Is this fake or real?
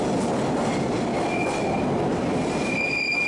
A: real